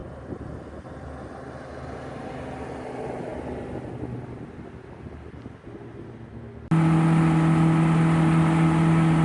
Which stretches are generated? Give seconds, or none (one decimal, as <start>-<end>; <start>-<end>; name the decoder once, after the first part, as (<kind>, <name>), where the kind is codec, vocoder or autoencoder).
none